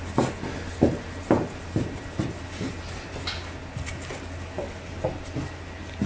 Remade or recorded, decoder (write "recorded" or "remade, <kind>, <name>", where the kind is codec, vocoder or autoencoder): recorded